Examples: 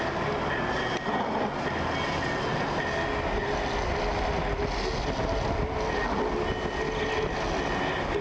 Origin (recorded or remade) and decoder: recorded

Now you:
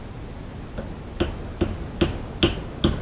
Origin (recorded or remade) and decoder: recorded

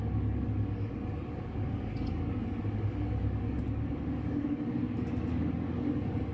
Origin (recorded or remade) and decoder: remade, codec, DAC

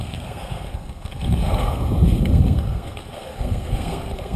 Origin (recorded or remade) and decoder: remade, codec, SNAC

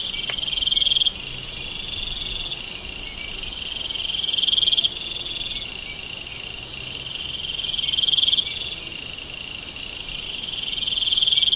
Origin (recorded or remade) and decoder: recorded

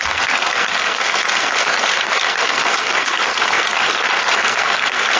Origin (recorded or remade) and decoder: remade, codec, SNAC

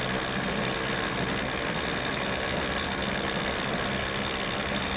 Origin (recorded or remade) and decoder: recorded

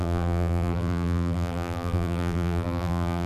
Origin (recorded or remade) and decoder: remade, vocoder, BigVGAN v2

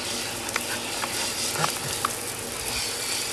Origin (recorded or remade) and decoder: recorded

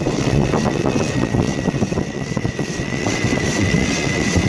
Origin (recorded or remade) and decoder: remade, vocoder, WaveNeXt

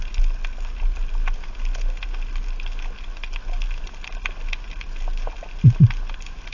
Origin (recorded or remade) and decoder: recorded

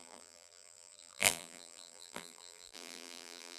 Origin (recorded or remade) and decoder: remade, vocoder, BigVGAN v2